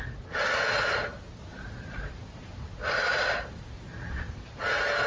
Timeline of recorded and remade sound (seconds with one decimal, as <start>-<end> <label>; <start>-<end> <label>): 0.0-1.5 recorded; 1.5-4.6 remade; 4.6-5.1 recorded